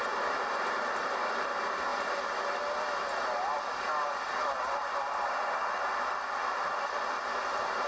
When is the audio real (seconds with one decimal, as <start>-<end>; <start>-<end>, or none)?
0.0-7.9